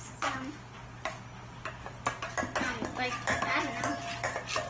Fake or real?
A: real